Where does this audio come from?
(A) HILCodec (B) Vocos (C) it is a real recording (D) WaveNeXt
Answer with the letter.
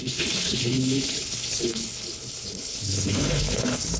A